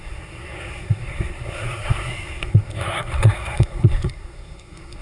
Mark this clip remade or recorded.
remade